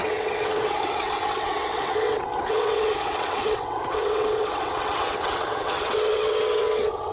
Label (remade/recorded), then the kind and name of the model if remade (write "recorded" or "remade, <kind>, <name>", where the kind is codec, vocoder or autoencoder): remade, vocoder, WaveNeXt